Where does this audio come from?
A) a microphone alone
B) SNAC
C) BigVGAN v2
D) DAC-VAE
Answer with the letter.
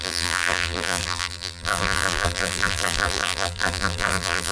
C